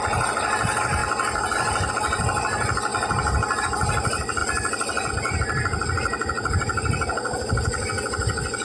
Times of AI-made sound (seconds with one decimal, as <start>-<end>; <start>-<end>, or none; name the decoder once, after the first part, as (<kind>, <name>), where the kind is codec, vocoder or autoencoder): none